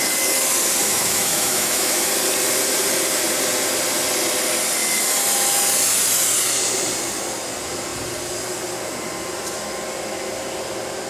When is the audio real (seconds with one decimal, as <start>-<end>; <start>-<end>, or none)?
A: 0.0-0.8; 2.1-11.1